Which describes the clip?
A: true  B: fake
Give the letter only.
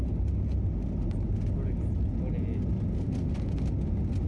A